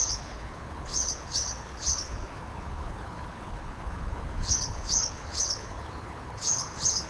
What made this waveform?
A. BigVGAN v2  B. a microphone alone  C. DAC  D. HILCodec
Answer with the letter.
D